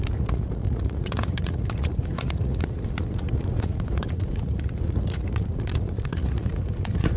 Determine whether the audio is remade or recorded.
remade